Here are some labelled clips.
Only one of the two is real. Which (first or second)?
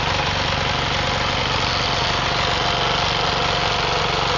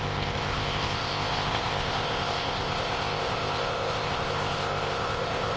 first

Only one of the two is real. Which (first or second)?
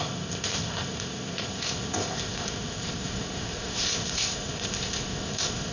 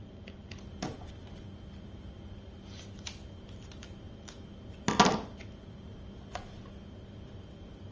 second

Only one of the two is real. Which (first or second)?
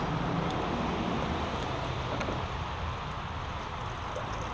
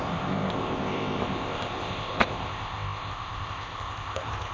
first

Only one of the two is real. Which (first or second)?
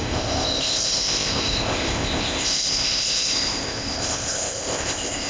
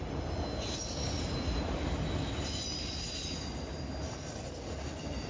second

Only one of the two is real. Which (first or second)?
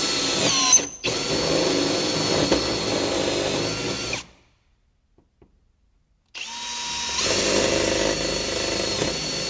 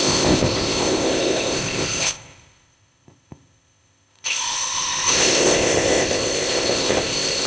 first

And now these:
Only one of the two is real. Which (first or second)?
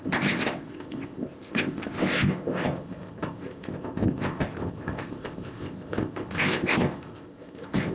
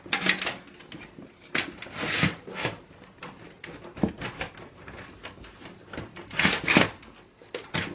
second